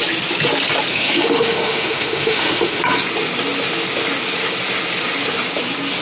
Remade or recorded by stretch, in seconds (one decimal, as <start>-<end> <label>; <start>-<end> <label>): 0.0-0.9 recorded; 0.9-2.8 remade; 2.8-6.0 recorded